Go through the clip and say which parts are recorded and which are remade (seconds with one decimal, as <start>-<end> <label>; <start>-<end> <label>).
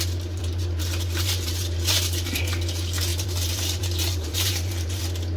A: 0.0-0.4 recorded; 0.4-2.4 remade; 2.4-3.1 recorded; 3.1-5.0 remade; 5.0-5.4 recorded